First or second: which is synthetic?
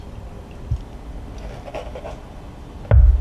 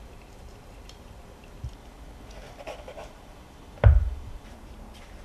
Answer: second